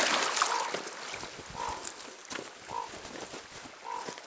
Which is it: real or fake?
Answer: real